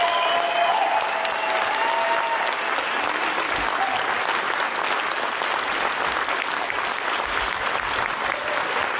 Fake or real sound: real